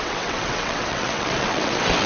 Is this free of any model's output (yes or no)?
no